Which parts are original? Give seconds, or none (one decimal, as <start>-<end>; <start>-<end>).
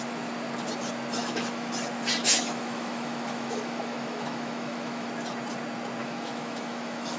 0.0-1.2; 1.7-2.2; 5.1-6.0